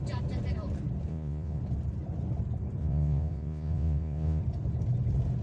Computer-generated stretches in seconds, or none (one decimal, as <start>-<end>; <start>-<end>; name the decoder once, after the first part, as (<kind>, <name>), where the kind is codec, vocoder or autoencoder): 1.1-1.6 (vocoder, Vocos); 2.8-4.4